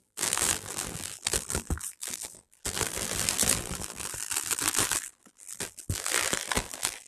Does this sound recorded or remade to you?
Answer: remade